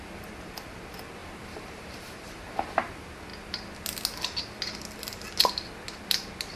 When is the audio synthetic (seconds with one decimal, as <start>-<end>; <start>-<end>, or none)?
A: 1.2-2.9